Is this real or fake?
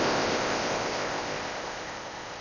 fake